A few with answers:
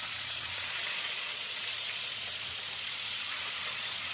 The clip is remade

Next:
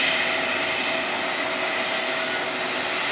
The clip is recorded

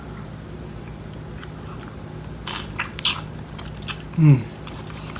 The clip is recorded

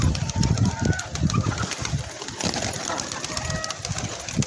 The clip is recorded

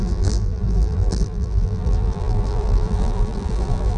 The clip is remade